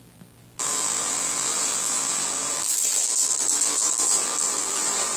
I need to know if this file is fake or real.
fake